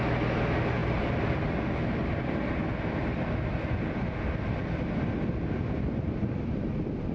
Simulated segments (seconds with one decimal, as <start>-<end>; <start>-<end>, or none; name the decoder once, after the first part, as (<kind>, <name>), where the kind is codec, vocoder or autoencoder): none